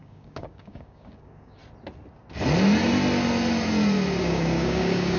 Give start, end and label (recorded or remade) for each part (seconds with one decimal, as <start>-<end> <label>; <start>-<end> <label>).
0.0-1.6 remade; 1.6-4.2 recorded; 4.2-5.2 remade